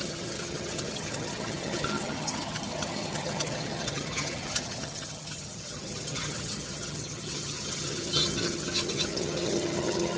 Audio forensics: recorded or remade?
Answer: remade